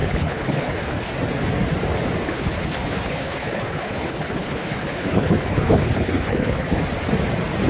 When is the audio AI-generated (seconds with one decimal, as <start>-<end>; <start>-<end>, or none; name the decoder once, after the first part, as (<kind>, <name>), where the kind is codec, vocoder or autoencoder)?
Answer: 0.0-1.1 (codec, HILCodec); 2.2-6.8